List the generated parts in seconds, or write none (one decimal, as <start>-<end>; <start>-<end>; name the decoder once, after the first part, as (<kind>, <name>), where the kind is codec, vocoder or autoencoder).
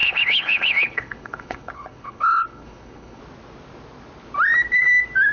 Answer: 0.0-3.2 (codec, HILCodec)